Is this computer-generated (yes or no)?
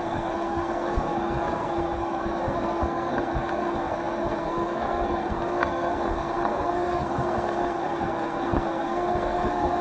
yes